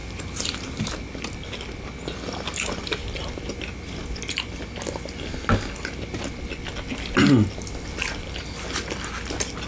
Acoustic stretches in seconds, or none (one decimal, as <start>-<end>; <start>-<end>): 0.8-9.7